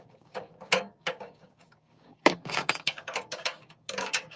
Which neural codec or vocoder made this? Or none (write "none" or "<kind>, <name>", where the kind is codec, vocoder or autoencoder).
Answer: codec, DAC